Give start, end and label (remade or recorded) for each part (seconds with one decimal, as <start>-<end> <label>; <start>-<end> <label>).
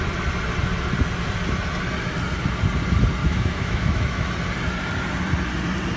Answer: 0.0-3.2 recorded; 3.2-4.3 remade; 4.3-6.0 recorded